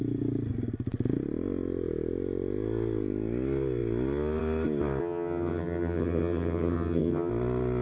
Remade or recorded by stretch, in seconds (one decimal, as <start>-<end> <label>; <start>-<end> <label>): 0.0-5.0 recorded; 5.0-7.3 remade; 7.3-7.8 recorded